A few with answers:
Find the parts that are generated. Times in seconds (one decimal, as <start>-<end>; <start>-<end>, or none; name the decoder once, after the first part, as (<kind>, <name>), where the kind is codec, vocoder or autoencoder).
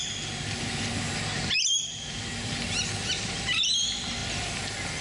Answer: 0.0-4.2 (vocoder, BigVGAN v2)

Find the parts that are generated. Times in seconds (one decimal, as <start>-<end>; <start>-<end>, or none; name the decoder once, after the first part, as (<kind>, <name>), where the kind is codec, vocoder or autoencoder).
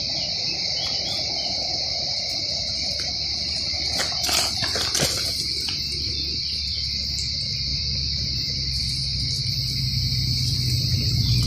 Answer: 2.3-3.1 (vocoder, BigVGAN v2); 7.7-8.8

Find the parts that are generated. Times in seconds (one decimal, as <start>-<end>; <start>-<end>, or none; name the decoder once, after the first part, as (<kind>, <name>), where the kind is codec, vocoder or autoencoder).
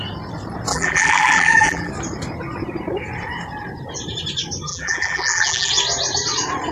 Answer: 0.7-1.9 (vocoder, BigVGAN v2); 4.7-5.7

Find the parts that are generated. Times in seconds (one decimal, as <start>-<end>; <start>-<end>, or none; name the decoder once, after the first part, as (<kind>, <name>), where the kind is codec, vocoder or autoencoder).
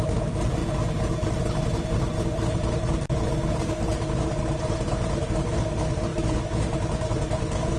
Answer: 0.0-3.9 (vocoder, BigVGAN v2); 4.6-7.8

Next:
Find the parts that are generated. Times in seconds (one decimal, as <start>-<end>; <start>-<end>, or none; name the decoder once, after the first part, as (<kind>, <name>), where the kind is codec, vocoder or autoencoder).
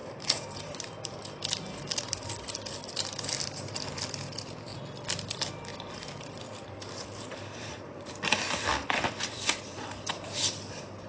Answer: 0.0-1.2 (vocoder, BigVGAN v2); 5.7-8.1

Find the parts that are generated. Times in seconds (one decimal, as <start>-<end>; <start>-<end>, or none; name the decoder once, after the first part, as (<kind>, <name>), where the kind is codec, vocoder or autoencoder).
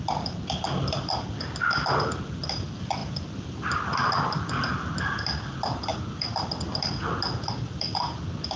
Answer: 3.0-3.8 (vocoder, BigVGAN v2); 5.9-6.7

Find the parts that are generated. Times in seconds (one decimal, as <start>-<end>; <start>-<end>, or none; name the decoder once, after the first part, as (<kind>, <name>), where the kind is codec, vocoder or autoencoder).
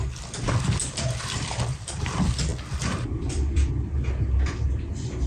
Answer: 0.8-2.0 (vocoder, BigVGAN v2); 2.5-3.8